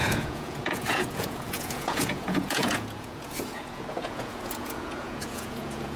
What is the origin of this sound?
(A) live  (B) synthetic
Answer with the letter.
B